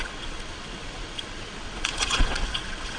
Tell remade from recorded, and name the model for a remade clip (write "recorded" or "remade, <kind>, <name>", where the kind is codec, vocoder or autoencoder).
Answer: remade, vocoder, Vocos